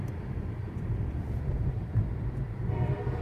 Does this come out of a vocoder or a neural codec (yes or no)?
yes